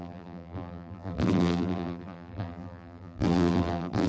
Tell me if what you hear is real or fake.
fake